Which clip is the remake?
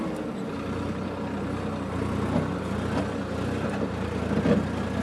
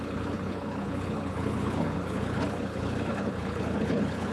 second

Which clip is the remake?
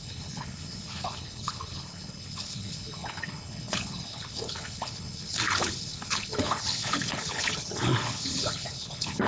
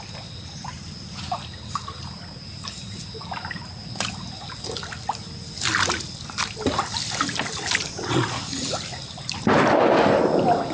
first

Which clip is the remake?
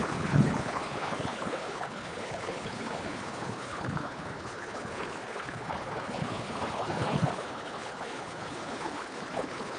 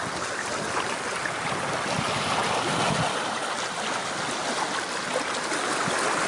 first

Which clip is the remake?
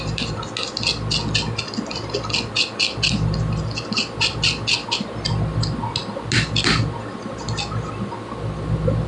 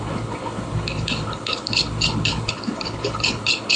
second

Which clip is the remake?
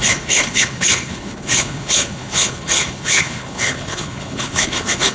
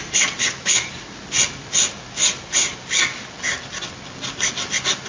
first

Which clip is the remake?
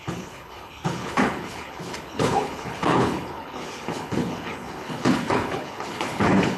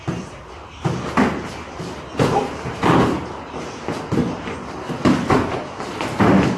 first